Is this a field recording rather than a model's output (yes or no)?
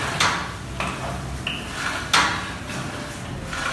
yes